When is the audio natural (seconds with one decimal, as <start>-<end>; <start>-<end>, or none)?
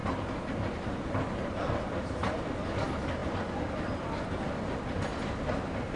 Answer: 0.0-6.0